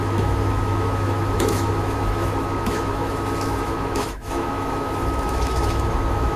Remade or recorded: remade